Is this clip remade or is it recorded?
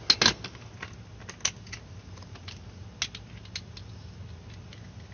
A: recorded